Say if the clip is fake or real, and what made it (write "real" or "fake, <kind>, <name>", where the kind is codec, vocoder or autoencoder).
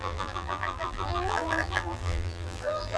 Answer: fake, vocoder, BigVGAN v2